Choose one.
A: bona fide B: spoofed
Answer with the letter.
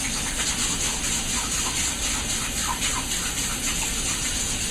A